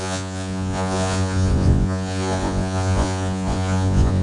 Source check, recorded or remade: remade